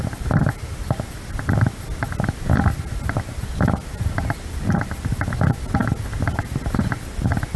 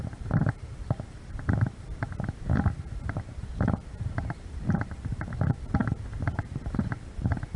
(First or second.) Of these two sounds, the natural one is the first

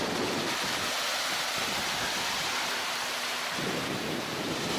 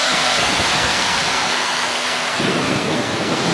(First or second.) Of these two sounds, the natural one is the first